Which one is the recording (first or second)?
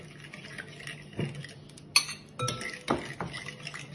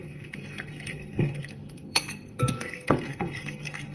first